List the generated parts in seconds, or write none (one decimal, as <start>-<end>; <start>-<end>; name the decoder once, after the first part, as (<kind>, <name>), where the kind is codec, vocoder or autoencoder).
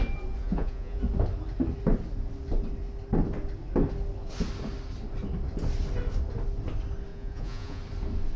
0.4-1.0 (vocoder, Vocos); 7.1-7.8